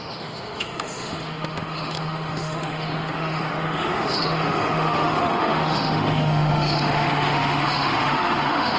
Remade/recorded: remade